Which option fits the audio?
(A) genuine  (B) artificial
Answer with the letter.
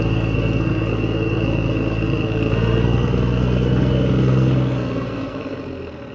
B